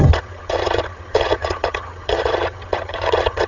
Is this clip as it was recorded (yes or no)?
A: no